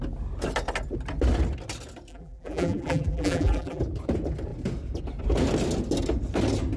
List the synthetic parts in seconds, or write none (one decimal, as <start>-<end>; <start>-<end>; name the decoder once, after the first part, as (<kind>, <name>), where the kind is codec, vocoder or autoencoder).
2.1-3.8 (vocoder, BigVGAN v2)